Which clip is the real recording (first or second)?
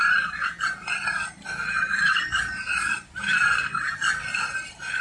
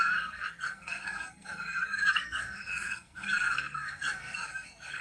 first